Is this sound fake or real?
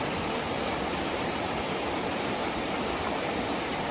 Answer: real